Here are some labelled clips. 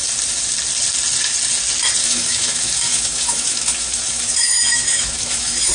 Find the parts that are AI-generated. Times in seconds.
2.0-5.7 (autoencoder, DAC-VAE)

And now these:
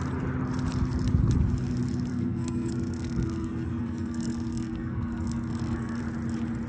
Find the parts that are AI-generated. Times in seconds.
2.1-6.0 (codec, SNAC)